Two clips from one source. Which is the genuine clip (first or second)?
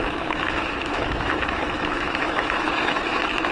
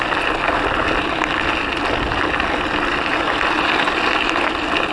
second